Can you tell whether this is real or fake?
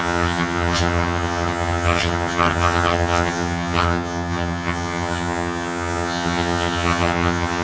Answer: fake